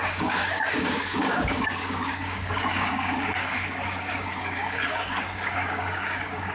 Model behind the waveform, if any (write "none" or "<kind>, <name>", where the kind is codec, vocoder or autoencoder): codec, DAC